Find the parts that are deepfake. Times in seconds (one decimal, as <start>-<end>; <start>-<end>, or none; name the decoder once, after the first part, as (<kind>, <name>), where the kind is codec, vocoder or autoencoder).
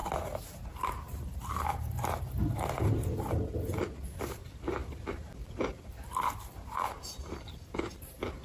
none